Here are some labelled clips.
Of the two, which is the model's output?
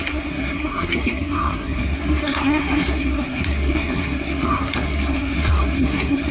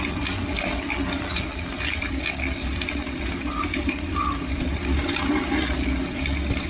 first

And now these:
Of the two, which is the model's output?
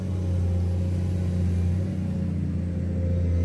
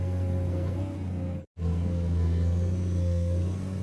second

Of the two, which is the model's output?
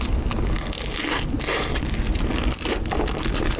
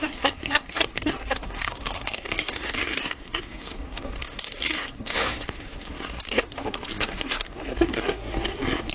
second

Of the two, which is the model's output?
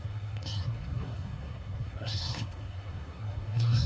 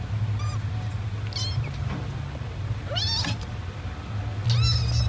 first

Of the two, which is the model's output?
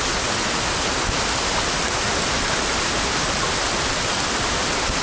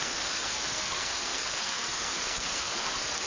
second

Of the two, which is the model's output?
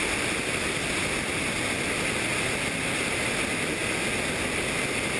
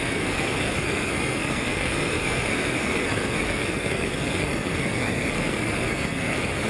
second